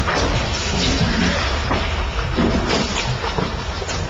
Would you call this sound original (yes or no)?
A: yes